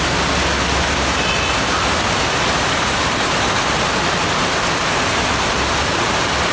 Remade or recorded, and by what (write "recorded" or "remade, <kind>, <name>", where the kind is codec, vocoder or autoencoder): recorded